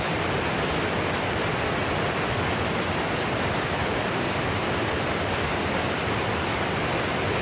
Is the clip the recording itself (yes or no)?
yes